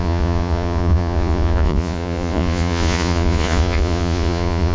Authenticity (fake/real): fake